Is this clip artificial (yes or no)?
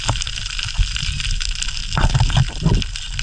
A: no